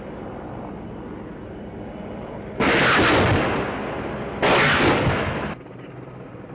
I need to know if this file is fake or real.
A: real